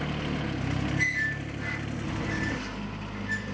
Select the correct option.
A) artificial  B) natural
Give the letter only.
B